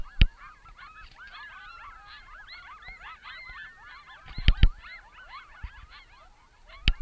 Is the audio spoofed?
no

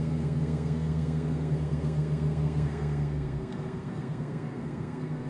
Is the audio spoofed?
yes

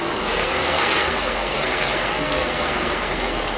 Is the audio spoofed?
yes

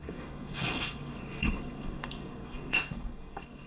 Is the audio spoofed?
yes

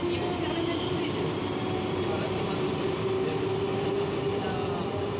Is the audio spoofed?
no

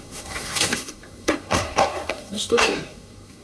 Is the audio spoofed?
yes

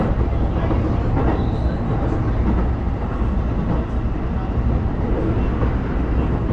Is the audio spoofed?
no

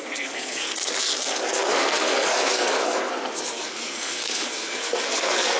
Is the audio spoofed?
yes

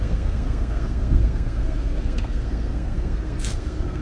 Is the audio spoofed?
yes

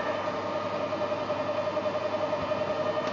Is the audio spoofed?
no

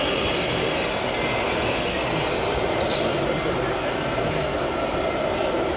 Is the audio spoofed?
no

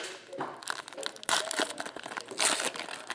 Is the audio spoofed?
no